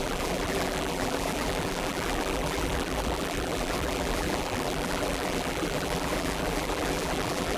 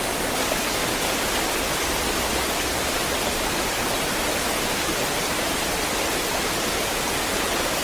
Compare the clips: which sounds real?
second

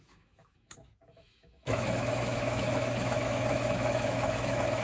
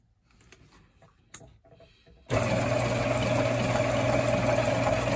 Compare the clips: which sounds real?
second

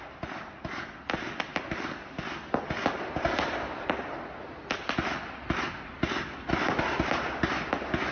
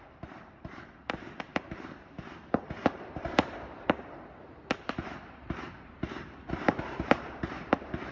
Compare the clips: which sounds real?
first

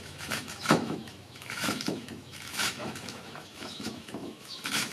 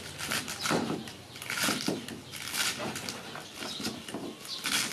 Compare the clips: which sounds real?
second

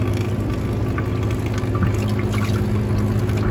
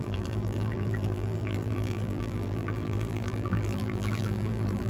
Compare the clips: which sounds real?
first